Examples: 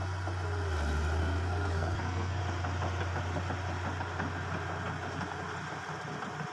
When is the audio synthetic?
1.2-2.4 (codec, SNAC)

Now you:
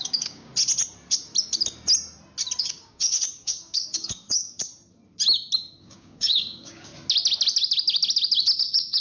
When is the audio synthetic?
0.0-0.5 (codec, DAC); 2.6-4.7; 5.8-6.9; 8.6-9.0

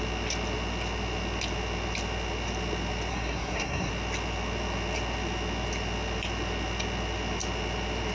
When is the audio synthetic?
3.1-3.9 (codec, SNAC)

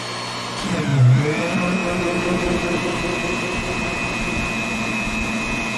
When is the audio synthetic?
none